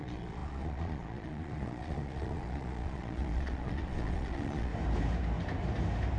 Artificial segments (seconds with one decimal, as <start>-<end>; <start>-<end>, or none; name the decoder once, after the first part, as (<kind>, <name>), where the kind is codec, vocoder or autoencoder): 0.0-4.7 (vocoder, Vocos)